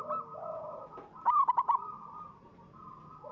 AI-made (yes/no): no